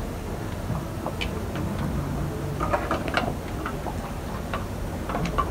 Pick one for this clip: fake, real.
real